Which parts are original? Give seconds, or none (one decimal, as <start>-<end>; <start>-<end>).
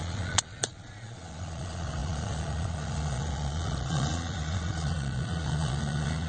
none